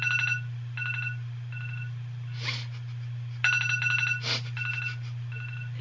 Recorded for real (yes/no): yes